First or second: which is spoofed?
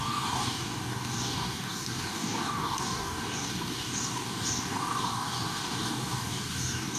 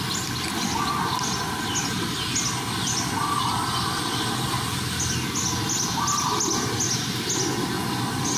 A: first